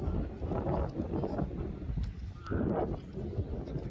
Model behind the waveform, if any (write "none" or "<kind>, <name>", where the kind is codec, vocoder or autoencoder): none